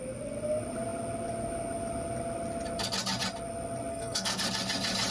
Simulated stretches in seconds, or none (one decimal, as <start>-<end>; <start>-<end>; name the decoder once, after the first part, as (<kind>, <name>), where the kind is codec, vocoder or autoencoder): 3.9-4.4 (codec, SNAC)